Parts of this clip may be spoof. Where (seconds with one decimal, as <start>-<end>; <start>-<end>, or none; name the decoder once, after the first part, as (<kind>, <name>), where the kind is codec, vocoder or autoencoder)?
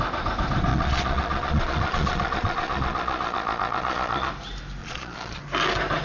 0.7-4.3 (vocoder, Vocos); 4.8-5.4